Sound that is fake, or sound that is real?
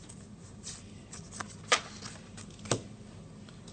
real